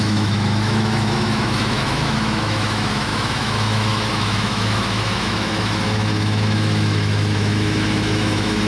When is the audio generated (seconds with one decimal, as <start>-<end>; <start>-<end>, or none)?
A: 0.0-8.7